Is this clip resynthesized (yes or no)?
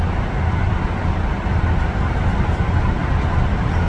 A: no